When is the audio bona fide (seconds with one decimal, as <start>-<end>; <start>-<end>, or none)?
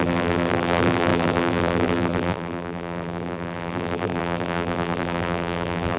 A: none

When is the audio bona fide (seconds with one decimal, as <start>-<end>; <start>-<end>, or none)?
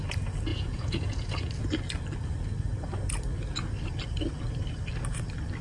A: 0.0-0.5; 1.5-5.6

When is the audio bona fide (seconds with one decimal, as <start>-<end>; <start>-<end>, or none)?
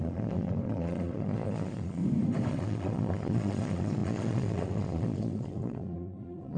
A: 2.0-2.5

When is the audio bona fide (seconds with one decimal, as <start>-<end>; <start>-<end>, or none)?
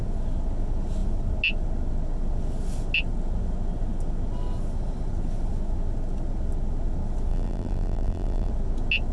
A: 0.0-7.3; 8.5-9.1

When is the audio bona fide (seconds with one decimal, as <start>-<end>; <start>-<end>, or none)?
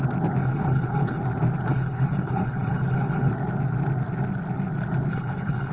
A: 0.0-0.4; 1.2-1.7; 3.3-5.1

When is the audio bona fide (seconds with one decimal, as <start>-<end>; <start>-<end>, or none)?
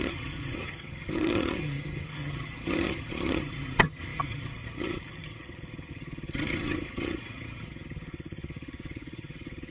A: none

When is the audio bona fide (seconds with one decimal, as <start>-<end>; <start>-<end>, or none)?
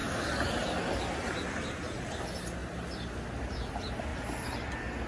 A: 0.0-4.1; 4.6-5.1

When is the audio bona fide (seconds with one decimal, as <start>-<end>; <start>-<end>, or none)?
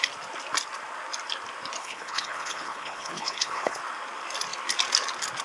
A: 0.0-1.8; 3.8-5.4